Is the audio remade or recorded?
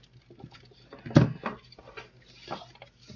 recorded